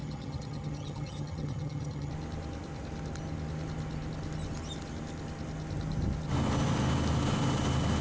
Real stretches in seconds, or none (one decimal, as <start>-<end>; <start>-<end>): 2.1-8.0